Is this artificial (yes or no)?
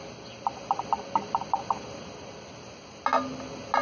no